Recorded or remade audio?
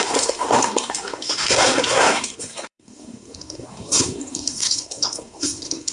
remade